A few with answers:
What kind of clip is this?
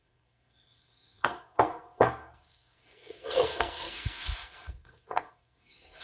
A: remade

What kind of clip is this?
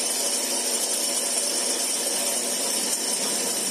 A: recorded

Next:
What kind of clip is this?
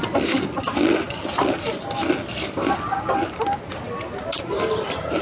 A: recorded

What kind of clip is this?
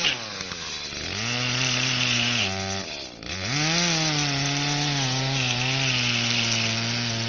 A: recorded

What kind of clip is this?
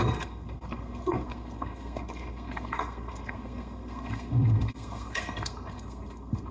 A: remade